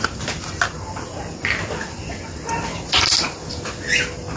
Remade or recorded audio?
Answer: recorded